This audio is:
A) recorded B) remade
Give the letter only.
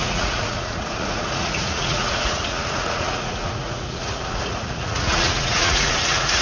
B